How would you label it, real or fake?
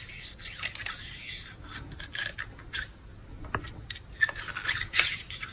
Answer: real